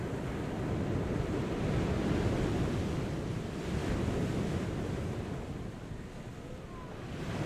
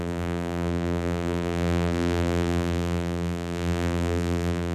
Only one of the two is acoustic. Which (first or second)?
first